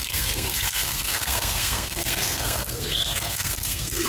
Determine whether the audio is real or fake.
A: fake